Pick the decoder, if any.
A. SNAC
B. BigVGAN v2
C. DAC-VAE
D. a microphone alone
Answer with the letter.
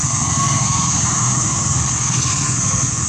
A